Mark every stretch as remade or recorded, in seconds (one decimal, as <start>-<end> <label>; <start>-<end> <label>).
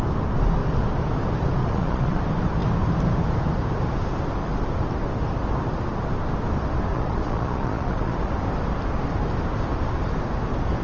0.0-1.6 recorded; 1.6-2.2 remade; 2.2-6.9 recorded; 6.9-8.3 remade; 8.3-10.8 recorded